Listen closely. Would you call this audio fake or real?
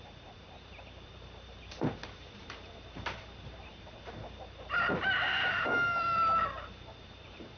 fake